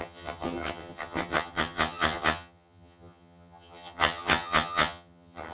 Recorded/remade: remade